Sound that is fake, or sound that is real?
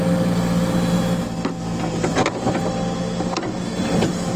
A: real